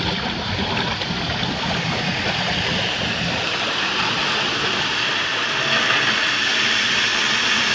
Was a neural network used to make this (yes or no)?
yes